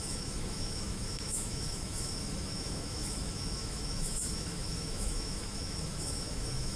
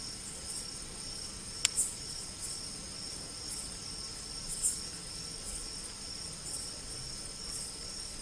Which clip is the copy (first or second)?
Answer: first